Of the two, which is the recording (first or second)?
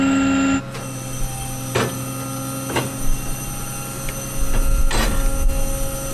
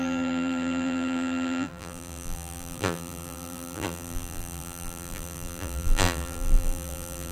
first